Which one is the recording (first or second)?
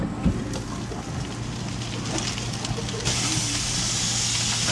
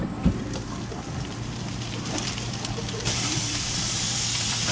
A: first